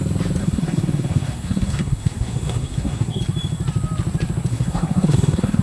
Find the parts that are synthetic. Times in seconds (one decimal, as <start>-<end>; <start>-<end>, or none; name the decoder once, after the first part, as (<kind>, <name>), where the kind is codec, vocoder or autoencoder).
0.4-3.2 (codec, SNAC); 4.5-5.6